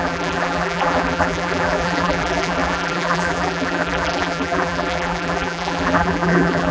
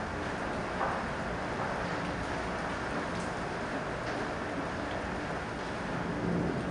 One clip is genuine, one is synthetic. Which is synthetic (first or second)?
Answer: first